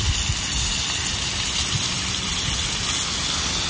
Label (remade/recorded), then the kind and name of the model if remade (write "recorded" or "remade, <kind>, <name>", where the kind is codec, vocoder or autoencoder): recorded